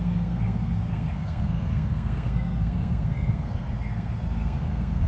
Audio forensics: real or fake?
fake